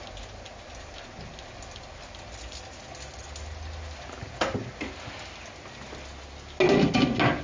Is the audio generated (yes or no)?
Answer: no